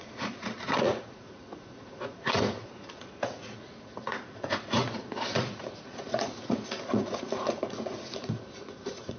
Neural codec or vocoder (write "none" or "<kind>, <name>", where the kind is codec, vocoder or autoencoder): vocoder, Vocos